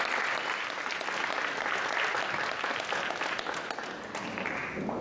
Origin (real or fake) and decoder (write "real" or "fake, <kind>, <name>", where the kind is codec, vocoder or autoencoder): real